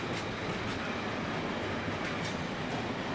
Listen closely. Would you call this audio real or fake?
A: real